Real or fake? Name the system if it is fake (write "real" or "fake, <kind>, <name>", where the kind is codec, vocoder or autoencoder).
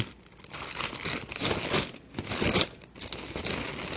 real